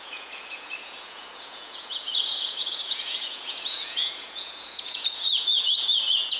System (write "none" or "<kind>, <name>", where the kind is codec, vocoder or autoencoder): vocoder, Vocos